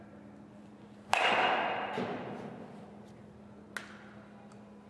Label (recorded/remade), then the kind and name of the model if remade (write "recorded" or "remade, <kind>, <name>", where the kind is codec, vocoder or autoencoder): recorded